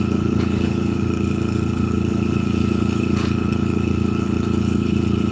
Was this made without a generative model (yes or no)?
no